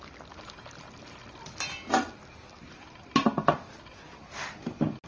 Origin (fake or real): real